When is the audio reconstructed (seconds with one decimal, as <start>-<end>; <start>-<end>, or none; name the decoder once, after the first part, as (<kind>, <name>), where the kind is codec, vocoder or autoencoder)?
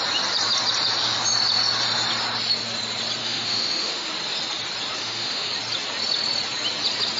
3.2-4.1 (autoencoder, DAC-VAE); 5.0-5.5